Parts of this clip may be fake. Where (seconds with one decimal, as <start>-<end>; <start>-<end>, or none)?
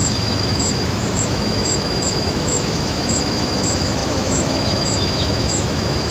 0.0-6.1